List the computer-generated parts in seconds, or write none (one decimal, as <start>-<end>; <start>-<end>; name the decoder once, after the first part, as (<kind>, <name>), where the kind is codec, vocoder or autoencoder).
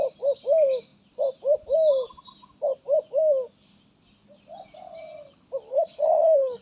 5.7-6.6 (codec, HILCodec)